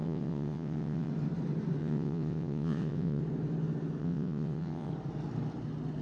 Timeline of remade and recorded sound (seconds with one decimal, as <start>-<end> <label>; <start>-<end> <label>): 0.0-1.1 remade; 1.1-1.8 recorded; 1.8-3.2 remade; 3.2-4.0 recorded; 4.0-4.9 remade; 4.9-6.0 recorded